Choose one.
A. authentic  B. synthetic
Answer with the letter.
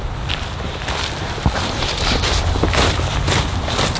B